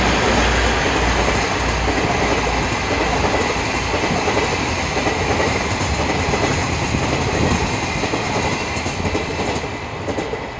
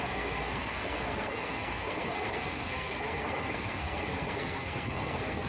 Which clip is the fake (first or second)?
second